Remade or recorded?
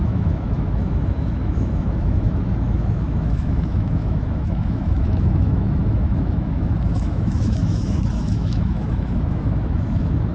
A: remade